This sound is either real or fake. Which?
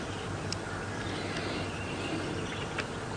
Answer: real